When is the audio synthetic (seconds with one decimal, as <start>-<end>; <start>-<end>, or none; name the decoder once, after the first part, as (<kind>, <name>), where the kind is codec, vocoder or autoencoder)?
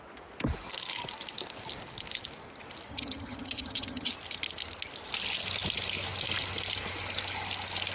2.9-4.1 (vocoder, HiFi-GAN)